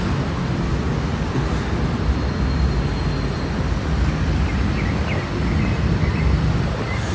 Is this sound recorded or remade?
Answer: recorded